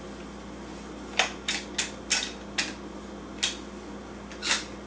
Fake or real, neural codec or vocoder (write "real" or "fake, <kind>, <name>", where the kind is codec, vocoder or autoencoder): real